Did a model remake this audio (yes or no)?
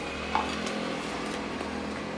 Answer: no